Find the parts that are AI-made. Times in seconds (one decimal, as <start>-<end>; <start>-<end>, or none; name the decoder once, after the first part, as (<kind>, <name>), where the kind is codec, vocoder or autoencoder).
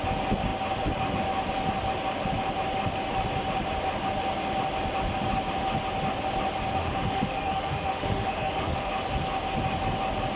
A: 6.8-8.9 (autoencoder, DAC-VAE)